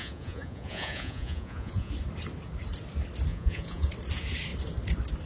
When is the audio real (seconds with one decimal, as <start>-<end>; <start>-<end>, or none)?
1.9-3.3; 3.9-5.3